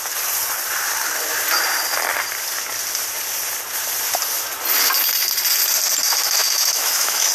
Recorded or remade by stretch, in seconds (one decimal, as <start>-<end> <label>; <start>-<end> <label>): 0.0-6.4 recorded; 6.4-7.3 remade